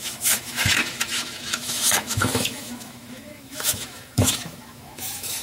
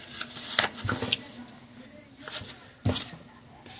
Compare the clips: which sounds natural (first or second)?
second